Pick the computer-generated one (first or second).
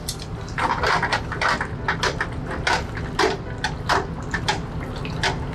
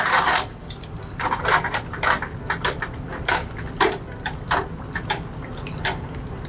second